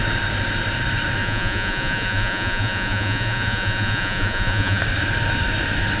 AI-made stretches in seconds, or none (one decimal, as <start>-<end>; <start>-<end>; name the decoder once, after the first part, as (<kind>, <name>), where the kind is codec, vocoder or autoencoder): 1.2-4.8 (vocoder, Vocos)